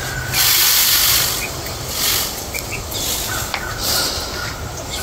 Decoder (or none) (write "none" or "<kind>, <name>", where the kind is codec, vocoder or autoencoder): none